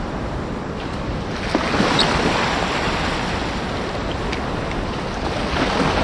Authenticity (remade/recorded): recorded